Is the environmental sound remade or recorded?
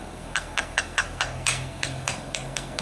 remade